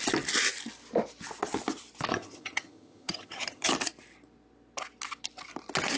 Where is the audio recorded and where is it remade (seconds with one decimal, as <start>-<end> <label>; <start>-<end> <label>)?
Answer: 0.0-2.1 recorded; 2.1-3.7 remade; 3.7-6.0 recorded